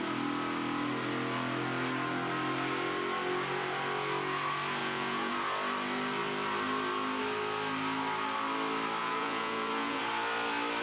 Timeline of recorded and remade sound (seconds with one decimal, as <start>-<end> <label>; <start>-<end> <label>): 0.0-4.8 recorded; 4.8-5.3 remade; 5.3-9.0 recorded; 9.0-10.0 remade; 10.0-10.8 recorded